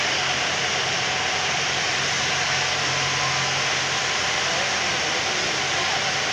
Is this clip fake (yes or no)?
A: no